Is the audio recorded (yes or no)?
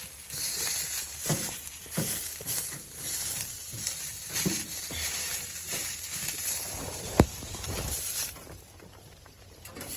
no